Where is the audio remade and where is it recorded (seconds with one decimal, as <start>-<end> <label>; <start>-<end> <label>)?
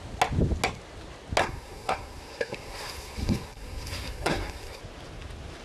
0.0-1.4 recorded; 1.4-4.8 remade; 4.8-5.6 recorded